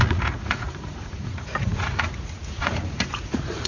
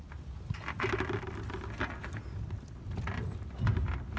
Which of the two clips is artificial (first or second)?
first